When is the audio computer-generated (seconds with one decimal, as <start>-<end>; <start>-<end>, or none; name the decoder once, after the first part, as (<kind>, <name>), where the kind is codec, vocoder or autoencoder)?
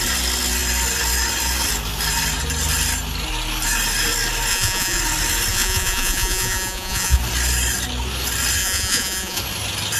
4.5-5.0 (vocoder, Vocos); 5.5-7.2; 8.6-9.4